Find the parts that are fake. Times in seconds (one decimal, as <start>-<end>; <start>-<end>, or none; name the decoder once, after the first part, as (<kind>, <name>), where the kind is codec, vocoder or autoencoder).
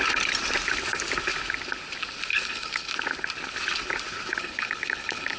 2.3-2.9 (codec, HILCodec); 4.4-5.4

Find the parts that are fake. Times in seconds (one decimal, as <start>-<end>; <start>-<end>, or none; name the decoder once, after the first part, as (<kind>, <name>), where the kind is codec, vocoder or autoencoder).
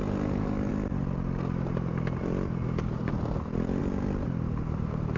none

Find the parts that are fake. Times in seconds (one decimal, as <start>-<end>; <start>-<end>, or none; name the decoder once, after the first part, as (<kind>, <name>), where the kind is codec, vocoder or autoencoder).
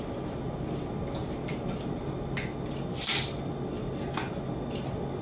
none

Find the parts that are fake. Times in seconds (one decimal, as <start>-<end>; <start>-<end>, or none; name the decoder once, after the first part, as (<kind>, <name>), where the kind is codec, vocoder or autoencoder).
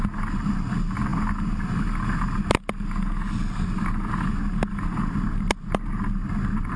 none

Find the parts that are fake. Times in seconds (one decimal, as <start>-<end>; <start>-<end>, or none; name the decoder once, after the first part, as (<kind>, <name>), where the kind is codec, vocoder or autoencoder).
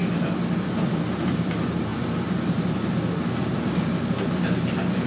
none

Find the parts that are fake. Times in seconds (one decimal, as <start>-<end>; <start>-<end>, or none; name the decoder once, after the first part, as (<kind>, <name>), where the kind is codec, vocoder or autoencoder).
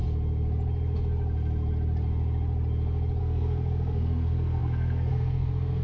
3.2-5.8 (codec, SNAC)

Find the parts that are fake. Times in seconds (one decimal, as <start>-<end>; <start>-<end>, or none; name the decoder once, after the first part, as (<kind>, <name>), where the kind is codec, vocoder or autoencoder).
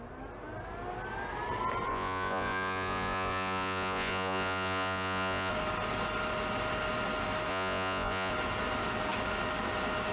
1.9-5.5 (vocoder, Vocos); 7.5-8.3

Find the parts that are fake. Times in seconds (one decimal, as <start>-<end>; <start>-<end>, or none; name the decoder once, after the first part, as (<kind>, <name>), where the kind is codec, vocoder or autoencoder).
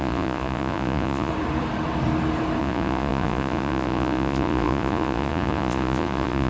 0.0-1.3 (vocoder, Vocos); 2.6-6.5